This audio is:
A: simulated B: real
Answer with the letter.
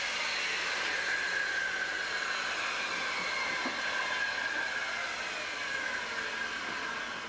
B